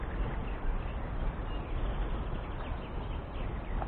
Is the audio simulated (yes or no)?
no